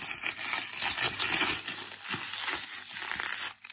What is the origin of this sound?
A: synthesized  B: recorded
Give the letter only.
B